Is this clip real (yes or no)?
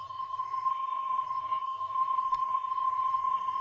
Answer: no